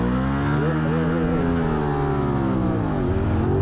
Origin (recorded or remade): recorded